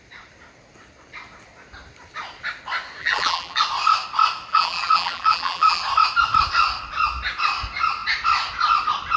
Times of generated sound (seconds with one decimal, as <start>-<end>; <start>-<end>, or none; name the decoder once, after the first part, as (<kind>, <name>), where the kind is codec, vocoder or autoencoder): 3.0-3.6 (vocoder, BigVGAN v2); 4.5-5.8